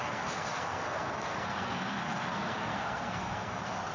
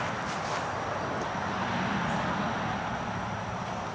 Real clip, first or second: second